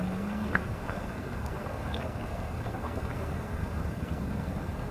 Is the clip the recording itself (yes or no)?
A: no